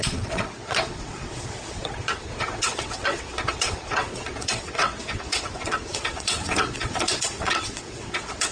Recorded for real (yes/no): no